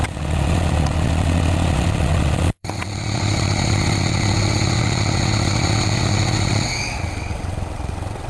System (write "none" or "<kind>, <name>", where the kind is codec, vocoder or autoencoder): vocoder, WaveNeXt